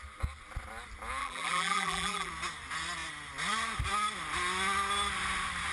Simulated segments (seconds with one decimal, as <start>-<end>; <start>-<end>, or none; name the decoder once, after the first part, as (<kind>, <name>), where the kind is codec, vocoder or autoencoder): 1.2-2.3 (vocoder, BigVGAN v2)